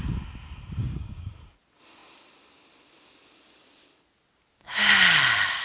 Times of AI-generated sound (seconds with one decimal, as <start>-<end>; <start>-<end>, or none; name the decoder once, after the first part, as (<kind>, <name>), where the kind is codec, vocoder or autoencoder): 0.8-1.3 (codec, DAC)